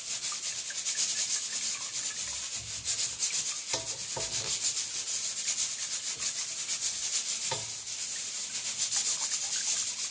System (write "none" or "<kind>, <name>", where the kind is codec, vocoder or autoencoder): none